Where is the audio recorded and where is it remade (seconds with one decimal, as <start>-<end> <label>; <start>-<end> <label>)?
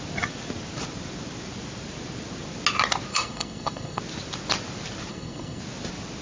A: 0.0-3.1 recorded; 3.1-4.0 remade; 4.0-5.1 recorded; 5.1-5.6 remade; 5.6-6.2 recorded